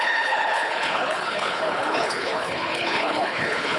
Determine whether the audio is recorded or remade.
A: remade